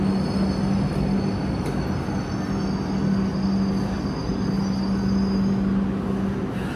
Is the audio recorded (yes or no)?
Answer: yes